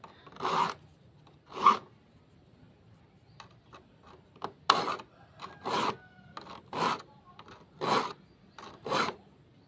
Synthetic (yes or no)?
no